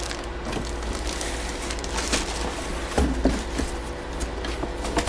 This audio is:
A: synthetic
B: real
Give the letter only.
B